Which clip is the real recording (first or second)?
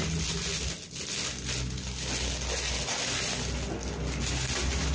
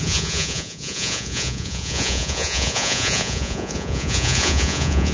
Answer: first